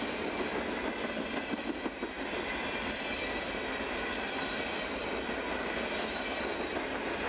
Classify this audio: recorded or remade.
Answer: recorded